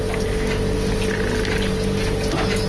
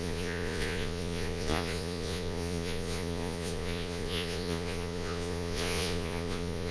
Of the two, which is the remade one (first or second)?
second